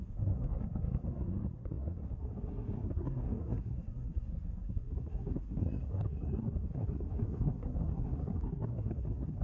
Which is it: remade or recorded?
remade